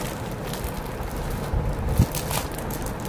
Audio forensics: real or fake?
real